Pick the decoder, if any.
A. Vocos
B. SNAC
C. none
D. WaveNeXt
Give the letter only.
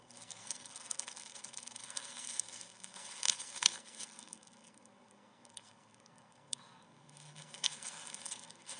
B